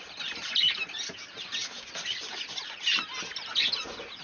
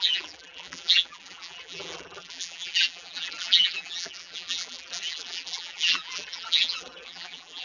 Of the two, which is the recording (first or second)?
first